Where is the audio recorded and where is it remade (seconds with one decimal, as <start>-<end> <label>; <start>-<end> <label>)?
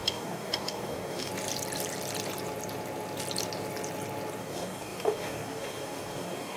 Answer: 0.0-1.3 remade; 1.3-4.4 recorded; 4.4-6.6 remade